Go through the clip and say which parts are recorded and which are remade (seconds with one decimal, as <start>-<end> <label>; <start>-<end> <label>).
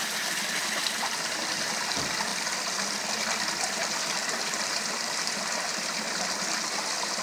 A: 0.0-7.2 recorded